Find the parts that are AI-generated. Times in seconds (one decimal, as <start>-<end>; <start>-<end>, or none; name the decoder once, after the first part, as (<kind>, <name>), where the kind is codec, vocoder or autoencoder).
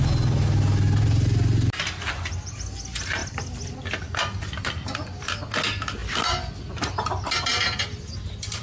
3.2-3.9 (vocoder, BigVGAN v2); 7.5-8.6